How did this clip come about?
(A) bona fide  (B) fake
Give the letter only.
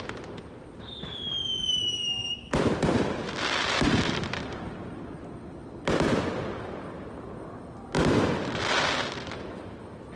A